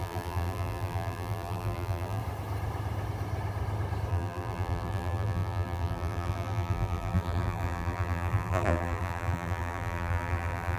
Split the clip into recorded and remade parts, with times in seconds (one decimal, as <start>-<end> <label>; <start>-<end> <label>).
0.0-2.2 remade; 2.2-4.1 recorded; 4.1-10.8 remade